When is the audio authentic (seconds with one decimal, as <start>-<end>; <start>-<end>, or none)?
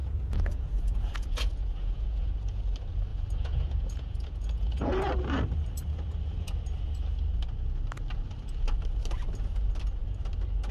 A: 2.6-3.1; 4.9-10.7